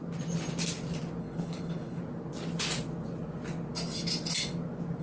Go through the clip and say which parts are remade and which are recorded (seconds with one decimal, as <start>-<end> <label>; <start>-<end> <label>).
0.0-1.2 recorded; 1.2-2.0 remade; 2.0-5.0 recorded